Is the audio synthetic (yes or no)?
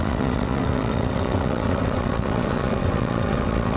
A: yes